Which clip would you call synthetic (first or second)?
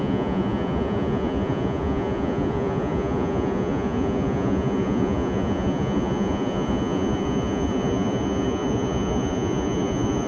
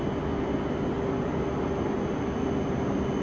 first